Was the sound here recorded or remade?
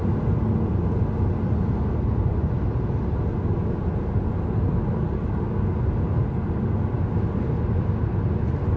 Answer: recorded